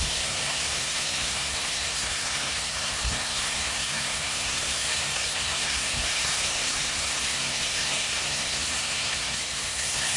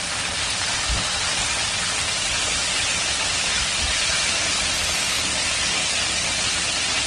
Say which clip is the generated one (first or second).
first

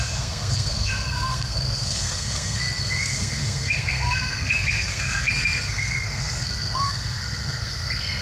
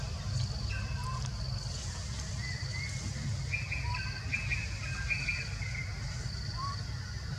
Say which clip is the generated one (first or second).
first